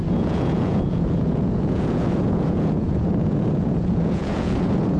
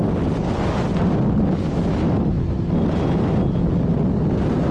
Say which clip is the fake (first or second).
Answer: first